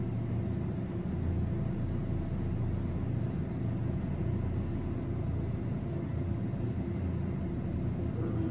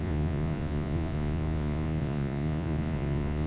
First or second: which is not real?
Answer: second